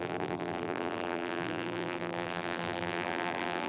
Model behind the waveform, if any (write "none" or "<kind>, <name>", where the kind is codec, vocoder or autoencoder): vocoder, BigVGAN v2